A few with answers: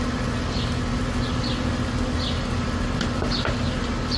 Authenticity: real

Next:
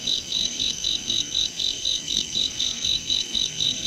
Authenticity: fake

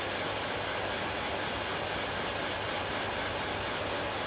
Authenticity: real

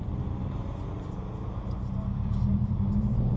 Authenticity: real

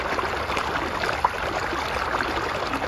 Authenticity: real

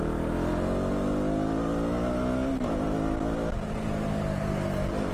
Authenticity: real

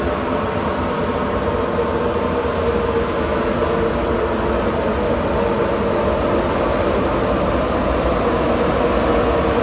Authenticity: real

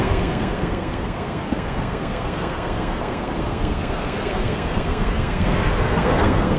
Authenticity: fake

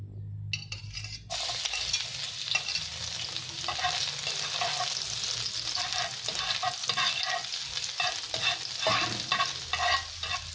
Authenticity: real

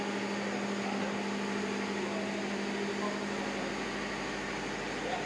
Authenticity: real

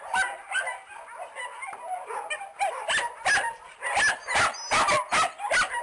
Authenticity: real